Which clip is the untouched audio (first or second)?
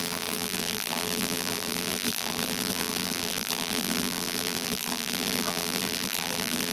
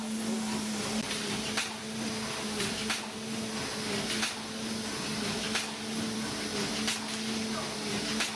second